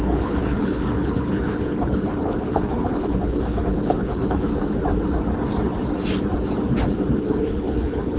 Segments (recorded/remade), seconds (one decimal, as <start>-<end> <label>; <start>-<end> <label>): 0.0-4.5 remade; 4.5-7.2 recorded; 7.2-8.2 remade

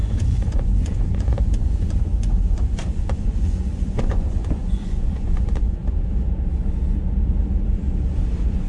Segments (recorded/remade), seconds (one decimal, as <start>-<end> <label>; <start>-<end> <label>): 0.0-5.8 remade; 5.8-8.7 recorded

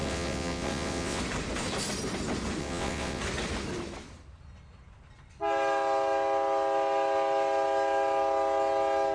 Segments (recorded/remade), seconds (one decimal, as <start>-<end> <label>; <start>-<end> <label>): 0.0-1.2 remade; 1.2-2.6 recorded; 2.6-3.2 remade; 3.2-9.1 recorded

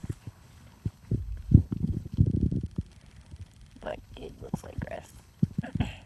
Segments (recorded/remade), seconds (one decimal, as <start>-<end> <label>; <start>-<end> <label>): 0.0-2.2 remade; 2.2-3.9 recorded; 3.9-5.6 remade; 5.6-6.1 recorded

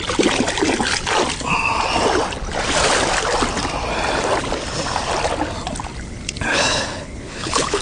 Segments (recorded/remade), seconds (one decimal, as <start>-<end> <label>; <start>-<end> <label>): 0.0-6.5 recorded; 6.5-7.8 remade